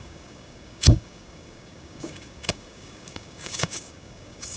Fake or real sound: fake